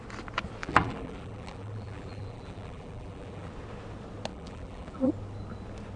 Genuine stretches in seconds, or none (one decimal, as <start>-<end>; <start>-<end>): 0.0-0.6; 3.5-4.3; 5.1-6.0